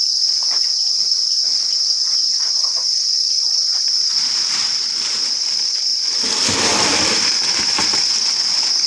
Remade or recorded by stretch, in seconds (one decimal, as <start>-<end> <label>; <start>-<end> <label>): 0.0-8.9 recorded